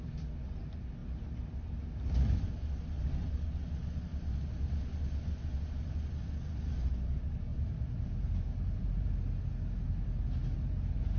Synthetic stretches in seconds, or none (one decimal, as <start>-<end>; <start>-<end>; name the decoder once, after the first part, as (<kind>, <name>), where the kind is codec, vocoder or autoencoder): 7.5-9.2 (vocoder, BigVGAN v2)